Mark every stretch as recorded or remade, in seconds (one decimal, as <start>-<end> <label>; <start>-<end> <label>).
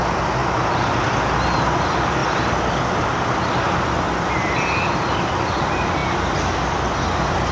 0.0-2.2 recorded; 2.2-3.5 remade; 3.5-7.5 recorded